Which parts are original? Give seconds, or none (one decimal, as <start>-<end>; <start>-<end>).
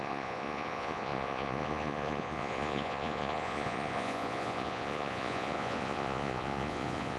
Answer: none